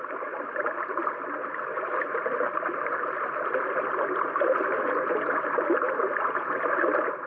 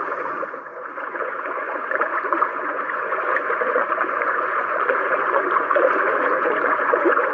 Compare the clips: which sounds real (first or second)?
first